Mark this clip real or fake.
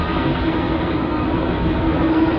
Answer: fake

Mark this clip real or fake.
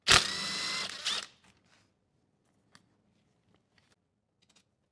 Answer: real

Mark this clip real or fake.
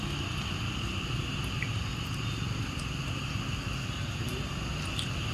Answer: real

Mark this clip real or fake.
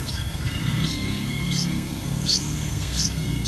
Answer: fake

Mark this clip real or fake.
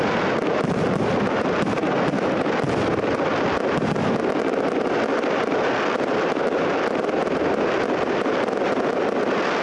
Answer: real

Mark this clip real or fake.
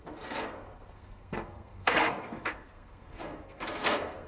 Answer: fake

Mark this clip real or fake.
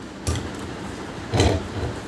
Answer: real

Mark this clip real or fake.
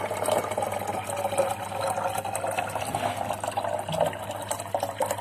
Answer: real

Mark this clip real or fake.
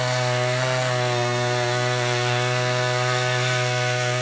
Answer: fake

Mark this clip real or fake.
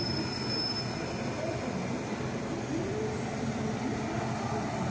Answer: real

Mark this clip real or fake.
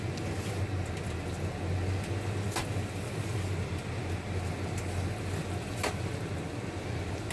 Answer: real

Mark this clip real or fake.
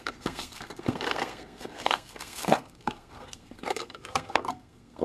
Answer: fake